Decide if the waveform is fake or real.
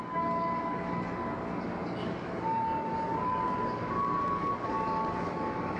fake